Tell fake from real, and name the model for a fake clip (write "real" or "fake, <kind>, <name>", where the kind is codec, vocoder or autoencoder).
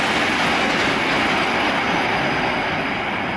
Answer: real